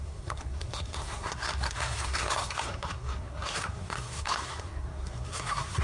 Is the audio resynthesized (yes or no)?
yes